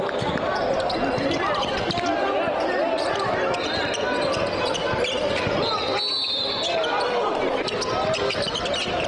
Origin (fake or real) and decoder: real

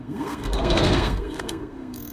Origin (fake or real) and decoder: fake, codec, SNAC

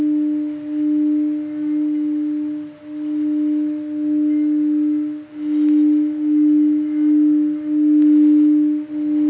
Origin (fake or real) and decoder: real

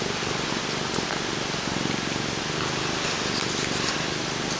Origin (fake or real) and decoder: real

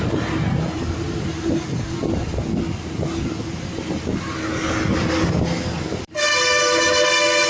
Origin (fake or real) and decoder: real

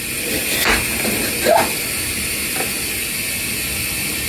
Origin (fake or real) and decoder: real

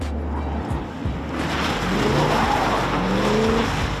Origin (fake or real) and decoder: real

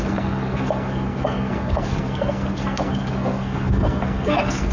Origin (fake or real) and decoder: fake, codec, SNAC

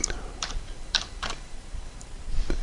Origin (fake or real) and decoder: fake, vocoder, BigVGAN v2